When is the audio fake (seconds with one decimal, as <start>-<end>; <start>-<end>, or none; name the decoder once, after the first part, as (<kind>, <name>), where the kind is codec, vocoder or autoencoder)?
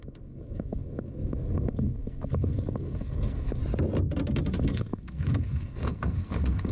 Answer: 0.0-3.6 (codec, SNAC); 4.6-6.7